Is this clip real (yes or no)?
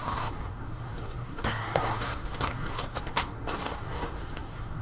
no